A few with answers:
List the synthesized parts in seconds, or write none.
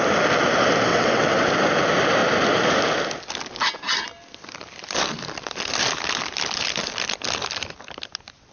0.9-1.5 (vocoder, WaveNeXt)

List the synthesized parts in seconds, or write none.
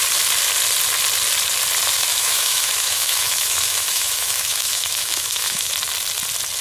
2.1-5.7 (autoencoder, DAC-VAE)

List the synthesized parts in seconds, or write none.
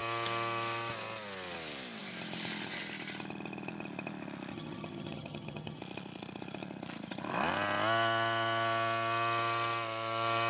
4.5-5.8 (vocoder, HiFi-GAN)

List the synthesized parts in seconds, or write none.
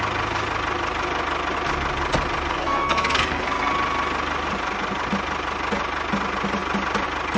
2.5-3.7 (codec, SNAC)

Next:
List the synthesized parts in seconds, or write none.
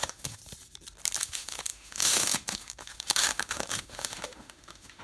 0.0-0.4 (autoencoder, DAC-VAE); 1.2-5.0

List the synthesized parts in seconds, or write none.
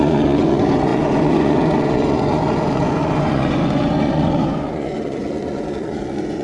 0.0-6.4 (vocoder, Vocos)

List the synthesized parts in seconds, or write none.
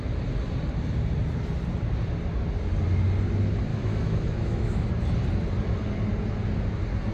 3.7-4.9 (autoencoder, DAC-VAE)